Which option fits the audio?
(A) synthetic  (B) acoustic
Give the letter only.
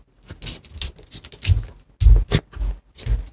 B